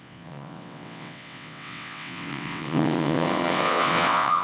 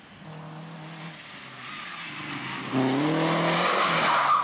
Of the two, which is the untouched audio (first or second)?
second